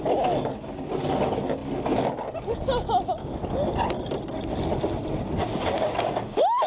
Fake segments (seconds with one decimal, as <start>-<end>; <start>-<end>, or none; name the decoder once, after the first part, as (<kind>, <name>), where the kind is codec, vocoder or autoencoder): none